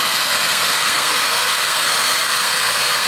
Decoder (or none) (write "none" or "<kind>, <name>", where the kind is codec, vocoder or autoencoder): codec, SNAC